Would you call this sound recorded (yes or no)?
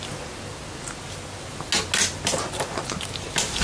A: yes